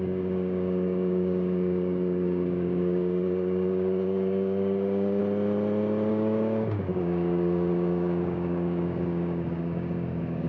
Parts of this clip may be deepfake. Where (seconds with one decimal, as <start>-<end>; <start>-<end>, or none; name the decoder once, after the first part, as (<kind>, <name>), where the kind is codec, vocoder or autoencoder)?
0.0-5.2 (codec, DAC); 6.1-10.5